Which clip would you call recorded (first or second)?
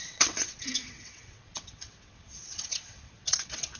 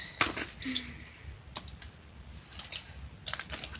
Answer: second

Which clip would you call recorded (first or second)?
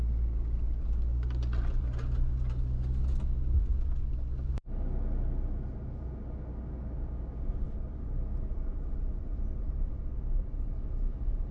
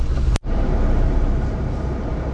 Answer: first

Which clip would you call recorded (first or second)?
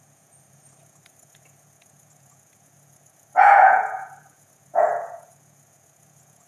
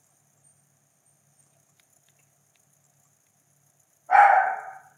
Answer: second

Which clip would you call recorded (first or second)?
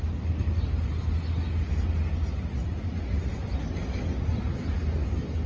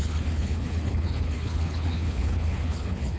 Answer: first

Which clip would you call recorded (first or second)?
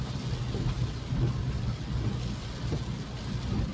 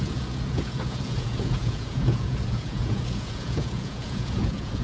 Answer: first